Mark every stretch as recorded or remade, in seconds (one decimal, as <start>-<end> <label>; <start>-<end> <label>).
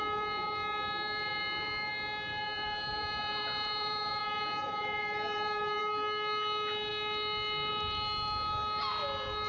0.0-2.3 recorded; 2.3-5.8 remade; 5.8-9.5 recorded